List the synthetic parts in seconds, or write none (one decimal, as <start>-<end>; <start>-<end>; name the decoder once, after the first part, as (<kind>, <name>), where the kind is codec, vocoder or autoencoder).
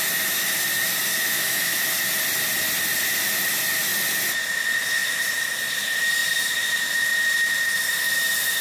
1.3-1.8 (autoencoder, DAC-VAE)